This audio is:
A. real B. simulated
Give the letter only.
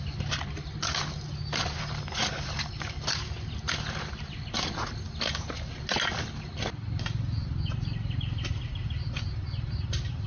A